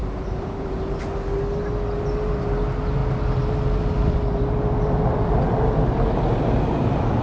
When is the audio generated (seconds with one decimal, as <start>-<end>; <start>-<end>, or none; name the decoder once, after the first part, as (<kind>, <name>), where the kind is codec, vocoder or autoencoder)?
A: 0.0-0.8 (vocoder, BigVGAN v2)